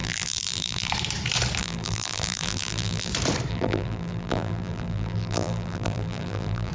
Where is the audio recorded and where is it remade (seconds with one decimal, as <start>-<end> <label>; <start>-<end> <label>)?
0.0-0.9 remade; 0.9-1.6 recorded; 1.6-3.1 remade; 3.1-3.5 recorded; 3.5-6.7 remade